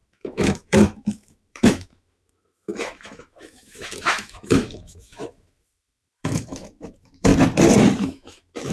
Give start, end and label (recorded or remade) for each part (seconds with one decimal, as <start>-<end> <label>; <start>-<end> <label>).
0.0-7.3 remade; 7.3-8.0 recorded; 8.0-8.7 remade